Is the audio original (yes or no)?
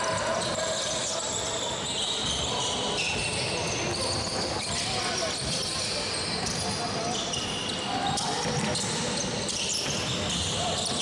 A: yes